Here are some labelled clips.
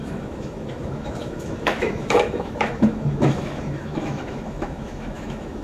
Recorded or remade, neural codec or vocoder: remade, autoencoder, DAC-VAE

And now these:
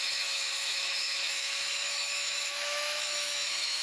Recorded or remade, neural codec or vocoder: remade, autoencoder, DAC-VAE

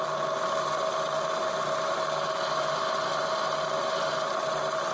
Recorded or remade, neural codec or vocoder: recorded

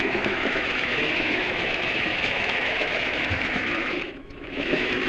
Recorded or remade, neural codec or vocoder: remade, autoencoder, DAC-VAE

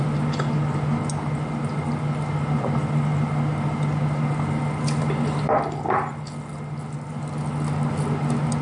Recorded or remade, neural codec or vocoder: recorded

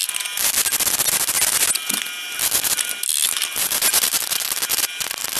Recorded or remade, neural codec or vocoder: recorded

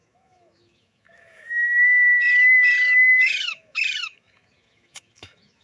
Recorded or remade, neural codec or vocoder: remade, autoencoder, DAC-VAE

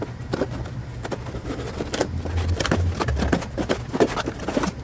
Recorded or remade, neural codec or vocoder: recorded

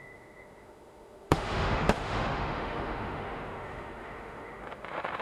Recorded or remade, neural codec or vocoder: remade, autoencoder, DAC-VAE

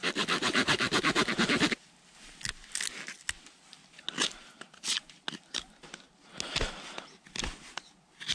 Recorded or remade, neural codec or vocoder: recorded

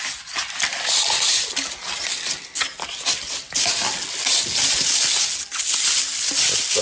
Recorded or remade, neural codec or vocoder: recorded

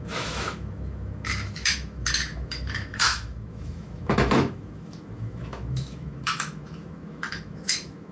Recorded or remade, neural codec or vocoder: remade, autoencoder, DAC-VAE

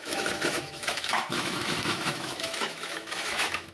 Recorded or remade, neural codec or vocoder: remade, autoencoder, DAC-VAE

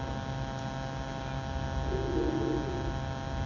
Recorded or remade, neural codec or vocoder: recorded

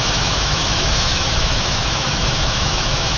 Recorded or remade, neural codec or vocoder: remade, autoencoder, DAC-VAE